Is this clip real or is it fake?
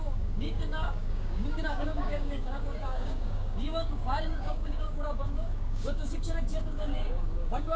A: fake